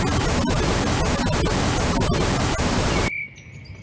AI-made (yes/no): no